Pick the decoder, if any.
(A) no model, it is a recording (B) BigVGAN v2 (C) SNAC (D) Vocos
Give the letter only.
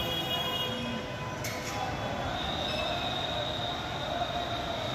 A